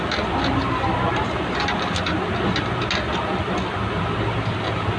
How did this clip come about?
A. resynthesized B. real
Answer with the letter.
B